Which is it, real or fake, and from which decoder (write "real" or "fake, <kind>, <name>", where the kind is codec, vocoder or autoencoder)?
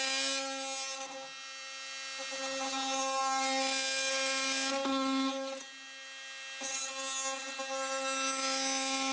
real